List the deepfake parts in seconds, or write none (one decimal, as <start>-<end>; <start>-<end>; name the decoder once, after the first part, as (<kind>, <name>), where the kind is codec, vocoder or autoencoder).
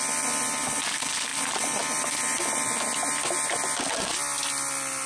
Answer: none